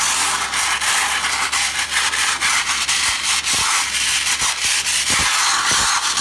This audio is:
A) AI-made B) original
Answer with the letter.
A